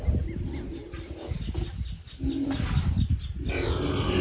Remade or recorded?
recorded